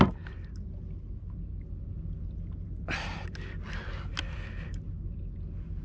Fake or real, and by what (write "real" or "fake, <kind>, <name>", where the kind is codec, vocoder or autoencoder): real